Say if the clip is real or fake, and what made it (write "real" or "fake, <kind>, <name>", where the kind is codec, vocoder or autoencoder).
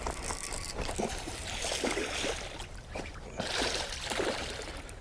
real